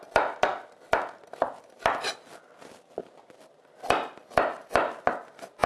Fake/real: real